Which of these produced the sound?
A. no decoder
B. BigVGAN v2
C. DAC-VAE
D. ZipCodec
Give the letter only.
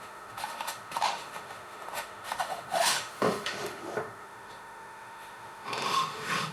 C